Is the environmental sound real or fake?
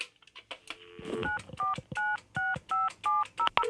real